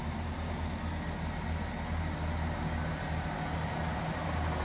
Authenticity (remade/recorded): recorded